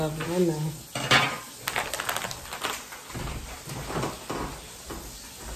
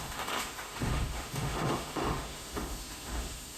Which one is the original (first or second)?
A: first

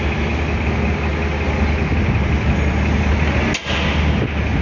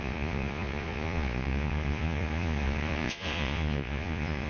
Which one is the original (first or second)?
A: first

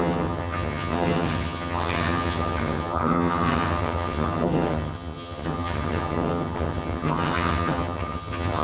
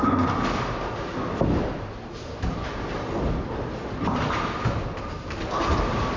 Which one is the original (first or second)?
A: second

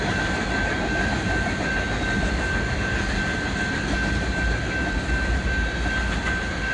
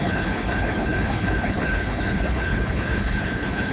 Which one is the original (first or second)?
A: first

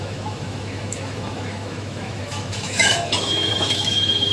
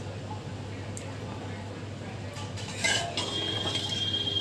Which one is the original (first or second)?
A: second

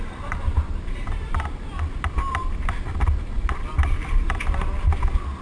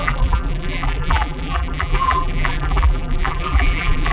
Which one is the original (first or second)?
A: first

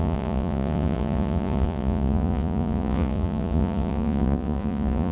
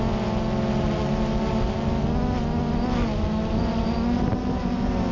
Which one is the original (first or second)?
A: second